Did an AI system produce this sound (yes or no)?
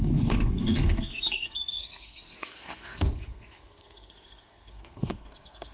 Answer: yes